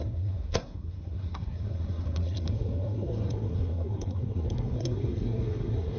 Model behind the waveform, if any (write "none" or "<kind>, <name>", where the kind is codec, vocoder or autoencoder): codec, SNAC